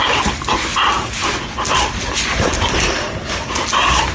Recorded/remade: recorded